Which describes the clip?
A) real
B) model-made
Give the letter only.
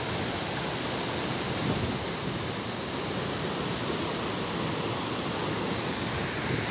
A